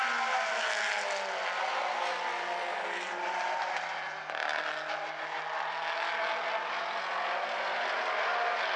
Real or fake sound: real